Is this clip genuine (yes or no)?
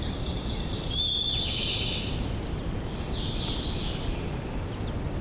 yes